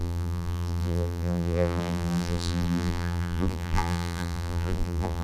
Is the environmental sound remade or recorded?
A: remade